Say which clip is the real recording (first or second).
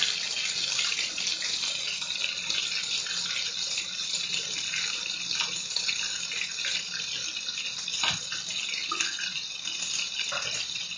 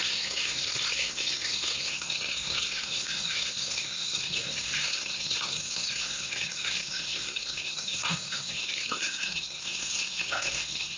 first